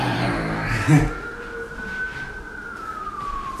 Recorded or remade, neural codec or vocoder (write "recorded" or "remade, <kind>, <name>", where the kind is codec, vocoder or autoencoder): recorded